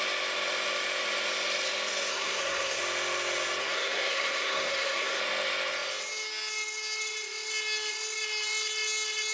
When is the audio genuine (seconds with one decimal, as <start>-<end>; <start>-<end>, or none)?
0.0-2.1; 2.8-3.6; 5.2-9.3